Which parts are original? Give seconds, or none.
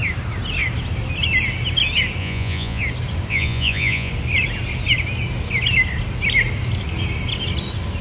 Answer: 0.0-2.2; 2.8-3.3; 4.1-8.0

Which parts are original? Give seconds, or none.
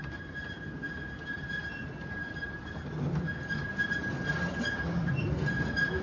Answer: 0.0-6.0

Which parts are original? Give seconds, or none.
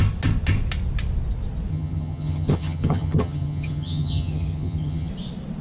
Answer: 0.0-1.7; 5.1-5.6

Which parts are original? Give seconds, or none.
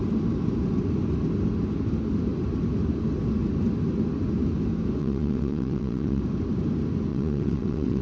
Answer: 0.0-5.0; 6.2-7.1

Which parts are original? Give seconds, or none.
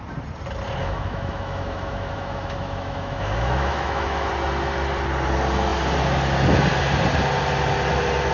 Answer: 0.0-0.8; 4.3-8.3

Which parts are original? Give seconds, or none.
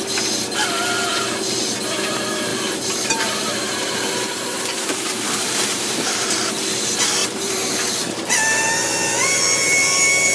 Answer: 0.0-1.1; 1.6-2.5; 6.3-7.2; 7.9-10.3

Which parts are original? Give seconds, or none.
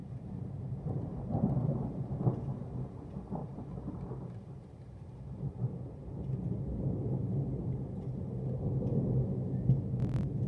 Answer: 2.2-3.4; 6.6-10.5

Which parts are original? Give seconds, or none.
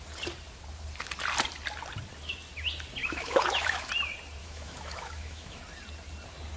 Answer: 0.0-3.0; 3.9-4.4; 5.6-6.6